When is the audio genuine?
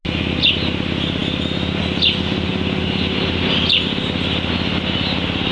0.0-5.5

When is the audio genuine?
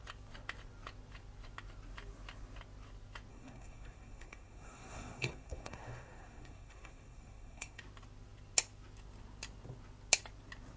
0.0-3.3; 7.8-10.8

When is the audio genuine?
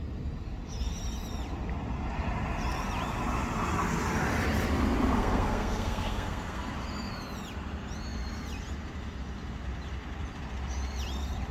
0.0-5.2; 6.7-11.5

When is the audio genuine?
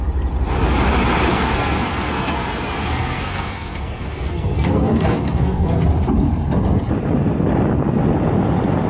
0.0-1.3; 5.8-8.9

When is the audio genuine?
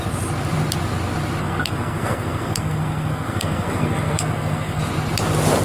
0.0-1.4; 4.8-5.6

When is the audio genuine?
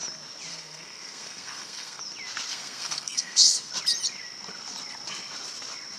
0.0-0.5; 2.0-2.5; 3.7-6.0